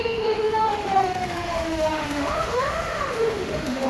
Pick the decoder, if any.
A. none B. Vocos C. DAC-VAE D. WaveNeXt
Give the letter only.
C